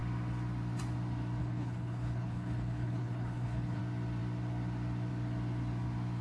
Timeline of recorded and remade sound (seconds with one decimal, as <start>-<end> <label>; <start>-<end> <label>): 0.0-1.4 recorded; 1.4-3.8 remade; 3.8-6.2 recorded